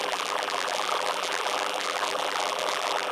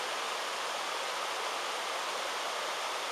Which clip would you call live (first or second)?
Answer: second